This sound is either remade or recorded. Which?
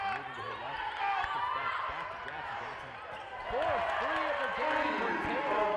recorded